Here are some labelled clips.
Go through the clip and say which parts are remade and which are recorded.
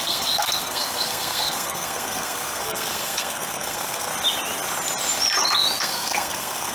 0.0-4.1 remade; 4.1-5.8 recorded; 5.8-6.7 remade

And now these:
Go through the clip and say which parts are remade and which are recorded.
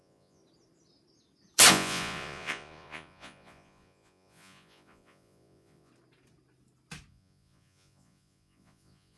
0.0-0.4 remade; 0.4-1.7 recorded; 1.7-5.9 remade; 5.9-7.1 recorded; 7.1-9.2 remade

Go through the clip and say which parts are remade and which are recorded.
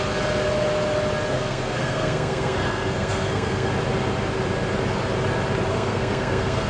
0.0-1.3 recorded; 1.3-3.7 remade; 3.7-5.7 recorded; 5.7-6.7 remade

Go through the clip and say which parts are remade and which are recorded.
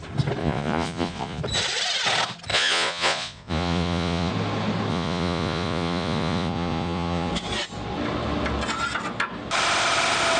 0.0-0.4 recorded; 0.4-1.4 remade; 1.4-2.5 recorded; 2.5-4.3 remade; 4.3-4.9 recorded; 4.9-7.3 remade; 7.3-10.4 recorded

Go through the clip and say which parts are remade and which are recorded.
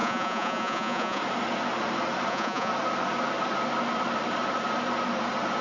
0.0-1.2 remade; 1.2-2.3 recorded; 2.3-2.7 remade; 2.7-5.6 recorded